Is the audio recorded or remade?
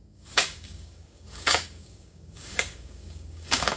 remade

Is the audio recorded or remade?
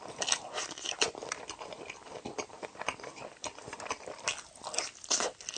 recorded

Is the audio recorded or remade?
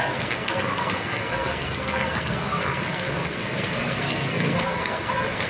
remade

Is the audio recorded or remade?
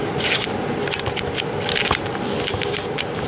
recorded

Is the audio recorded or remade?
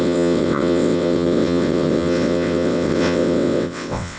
remade